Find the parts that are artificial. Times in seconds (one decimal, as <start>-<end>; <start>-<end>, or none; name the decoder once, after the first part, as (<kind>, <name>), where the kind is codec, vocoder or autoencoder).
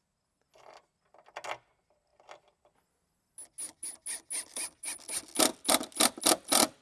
none